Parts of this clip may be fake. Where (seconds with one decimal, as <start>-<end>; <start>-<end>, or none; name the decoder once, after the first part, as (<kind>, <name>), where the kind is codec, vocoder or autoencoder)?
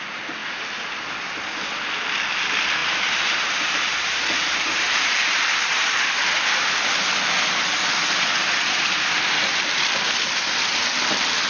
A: 2.8-6.1 (vocoder, BigVGAN v2); 8.4-9.6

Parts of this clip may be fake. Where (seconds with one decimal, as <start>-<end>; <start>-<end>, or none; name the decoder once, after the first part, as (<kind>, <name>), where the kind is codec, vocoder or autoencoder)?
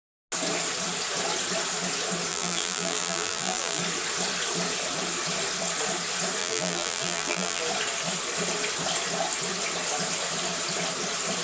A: 2.3-3.8 (vocoder, BigVGAN v2); 6.4-7.6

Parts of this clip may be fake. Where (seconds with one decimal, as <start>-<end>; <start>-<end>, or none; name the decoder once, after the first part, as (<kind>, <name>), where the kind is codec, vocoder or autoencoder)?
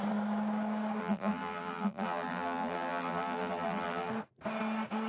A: 1.0-4.1 (vocoder, BigVGAN v2)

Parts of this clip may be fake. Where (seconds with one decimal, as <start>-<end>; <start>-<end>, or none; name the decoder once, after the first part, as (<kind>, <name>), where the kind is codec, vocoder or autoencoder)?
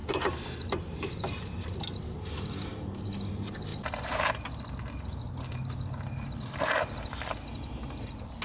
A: 0.0-1.0 (vocoder, BigVGAN v2); 3.7-4.3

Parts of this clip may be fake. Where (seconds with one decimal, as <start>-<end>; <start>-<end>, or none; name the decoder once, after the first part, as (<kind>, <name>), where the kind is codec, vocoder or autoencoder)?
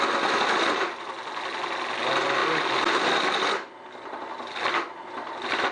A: none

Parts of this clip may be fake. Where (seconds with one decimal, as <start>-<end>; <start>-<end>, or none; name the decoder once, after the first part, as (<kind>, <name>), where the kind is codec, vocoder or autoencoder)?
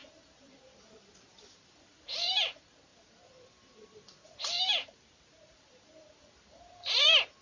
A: 0.0-7.4 (vocoder, BigVGAN v2)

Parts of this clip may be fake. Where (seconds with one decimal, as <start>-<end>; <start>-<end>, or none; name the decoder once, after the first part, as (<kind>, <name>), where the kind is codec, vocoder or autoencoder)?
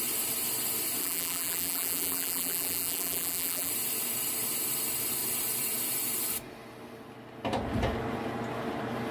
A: 1.0-3.7 (vocoder, BigVGAN v2)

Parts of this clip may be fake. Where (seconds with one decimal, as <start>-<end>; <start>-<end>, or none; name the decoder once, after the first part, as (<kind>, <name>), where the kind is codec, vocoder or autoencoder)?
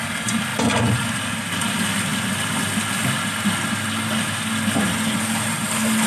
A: none